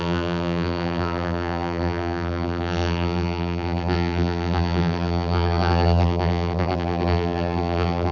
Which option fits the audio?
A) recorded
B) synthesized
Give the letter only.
B